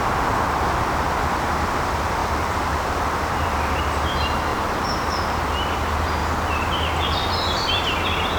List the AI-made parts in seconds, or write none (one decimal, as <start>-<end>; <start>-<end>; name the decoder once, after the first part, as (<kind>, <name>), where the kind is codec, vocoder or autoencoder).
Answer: 2.2-3.5 (vocoder, BigVGAN v2); 4.5-5.4; 6.2-7.8